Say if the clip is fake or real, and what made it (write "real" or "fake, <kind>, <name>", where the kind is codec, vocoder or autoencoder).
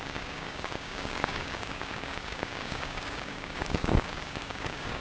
fake, codec, DAC